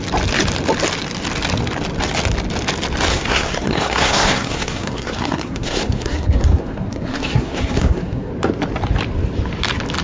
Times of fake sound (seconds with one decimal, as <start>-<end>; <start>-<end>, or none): 3.1-8.3